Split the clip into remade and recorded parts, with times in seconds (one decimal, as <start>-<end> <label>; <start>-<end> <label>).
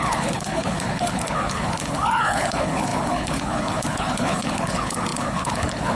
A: 0.0-5.9 remade